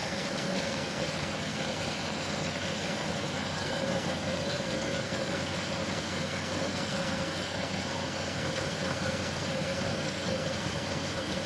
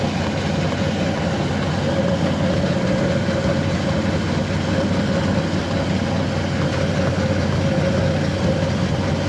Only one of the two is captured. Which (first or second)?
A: second